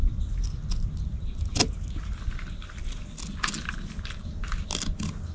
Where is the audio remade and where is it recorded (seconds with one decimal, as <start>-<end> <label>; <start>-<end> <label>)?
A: 0.0-5.3 recorded